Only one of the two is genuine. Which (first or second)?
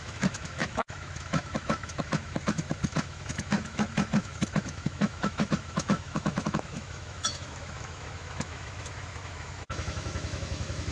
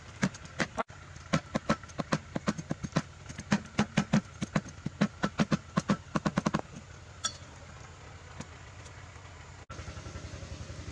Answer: second